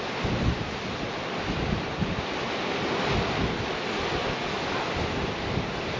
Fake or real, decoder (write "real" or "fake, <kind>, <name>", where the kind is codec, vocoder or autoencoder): real